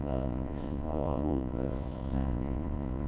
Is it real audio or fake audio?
fake